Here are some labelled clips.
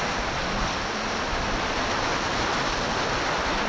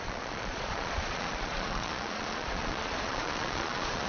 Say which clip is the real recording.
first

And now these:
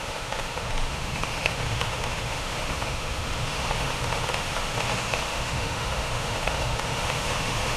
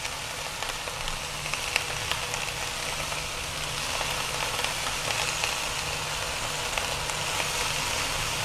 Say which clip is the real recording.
second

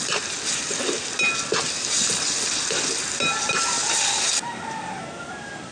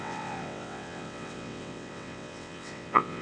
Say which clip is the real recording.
first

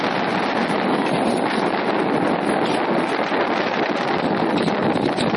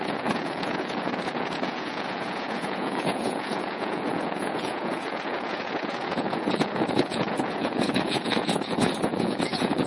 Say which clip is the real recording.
first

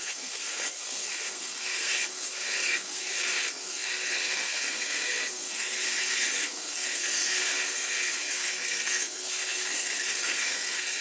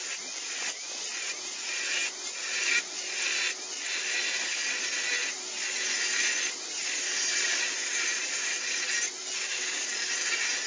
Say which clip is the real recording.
second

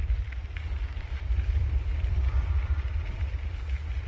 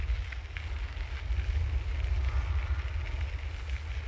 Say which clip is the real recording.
second